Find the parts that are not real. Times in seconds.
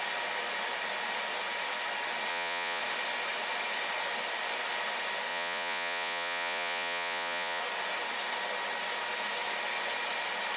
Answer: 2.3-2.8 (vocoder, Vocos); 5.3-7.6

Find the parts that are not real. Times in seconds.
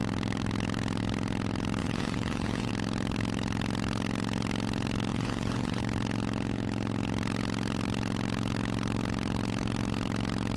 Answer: 1.8-2.7 (vocoder, Vocos); 5.1-5.8